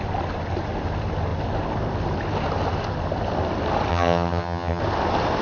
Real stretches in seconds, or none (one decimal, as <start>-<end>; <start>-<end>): 0.0-3.9; 4.8-5.4

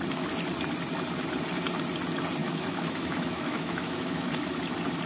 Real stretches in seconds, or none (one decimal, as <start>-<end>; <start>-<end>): 0.0-2.4; 4.3-5.1

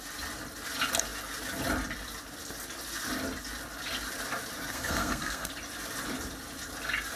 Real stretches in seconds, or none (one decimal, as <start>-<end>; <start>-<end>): 0.0-4.7; 5.5-7.2

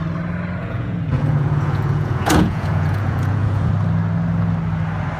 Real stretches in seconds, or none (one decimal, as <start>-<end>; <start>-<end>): 0.0-0.6; 3.7-5.2

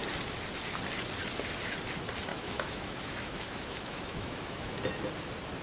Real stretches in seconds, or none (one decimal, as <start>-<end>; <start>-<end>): 0.0-2.3; 4.8-5.6

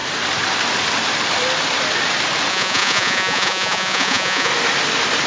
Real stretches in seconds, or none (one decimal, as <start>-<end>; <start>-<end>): 0.0-2.5; 4.5-5.3

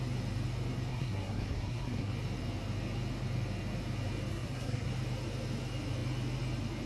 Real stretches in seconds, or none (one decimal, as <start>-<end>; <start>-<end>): 0.0-0.9; 2.1-4.3; 4.9-6.9